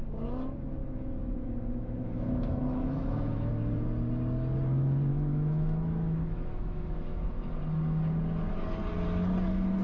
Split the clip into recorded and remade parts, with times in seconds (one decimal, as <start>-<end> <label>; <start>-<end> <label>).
0.0-0.8 recorded; 0.8-3.5 remade; 3.5-5.1 recorded; 5.1-7.5 remade; 7.5-9.8 recorded